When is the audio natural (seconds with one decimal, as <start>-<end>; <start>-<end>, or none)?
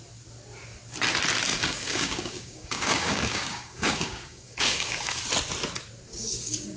0.0-1.5; 5.2-6.1